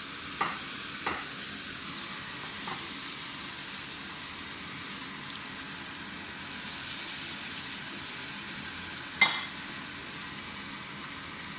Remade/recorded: recorded